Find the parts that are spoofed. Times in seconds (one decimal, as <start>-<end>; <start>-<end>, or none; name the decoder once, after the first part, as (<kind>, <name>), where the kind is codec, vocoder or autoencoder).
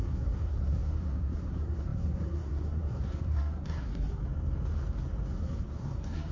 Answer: 0.0-4.2 (codec, SNAC); 5.4-6.3